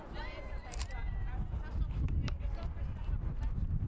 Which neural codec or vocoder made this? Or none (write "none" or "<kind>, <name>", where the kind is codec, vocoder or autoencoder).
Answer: vocoder, BigVGAN v2